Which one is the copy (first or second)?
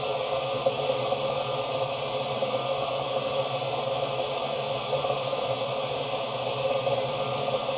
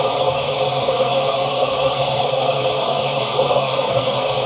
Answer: second